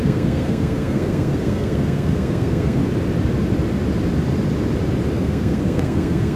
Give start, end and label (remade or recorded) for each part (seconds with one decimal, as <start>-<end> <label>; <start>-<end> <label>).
0.0-2.8 remade; 2.8-5.1 recorded; 5.1-6.4 remade